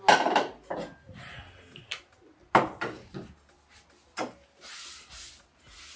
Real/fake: real